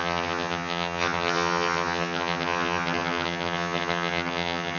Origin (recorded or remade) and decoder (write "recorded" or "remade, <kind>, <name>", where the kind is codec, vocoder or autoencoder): remade, vocoder, HiFi-GAN